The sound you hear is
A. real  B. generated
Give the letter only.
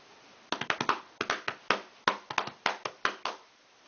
A